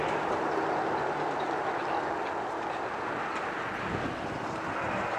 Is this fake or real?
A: real